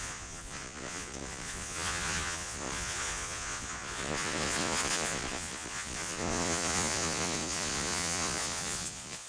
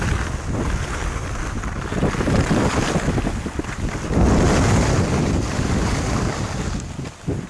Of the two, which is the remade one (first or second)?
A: first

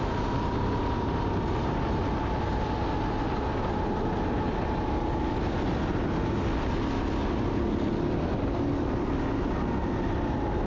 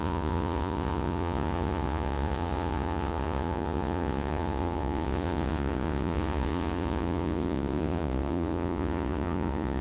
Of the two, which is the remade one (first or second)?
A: second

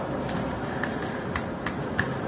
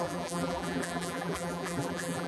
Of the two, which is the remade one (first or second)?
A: second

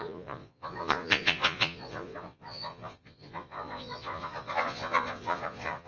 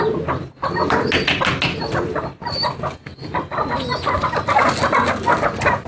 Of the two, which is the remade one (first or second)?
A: first